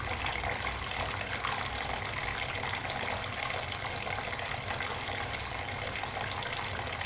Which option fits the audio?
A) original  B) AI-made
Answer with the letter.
A